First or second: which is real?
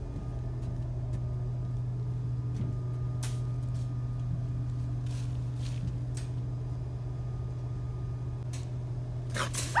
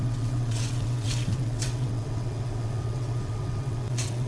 first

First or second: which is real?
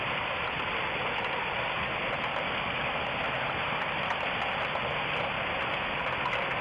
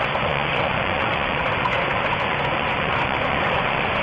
first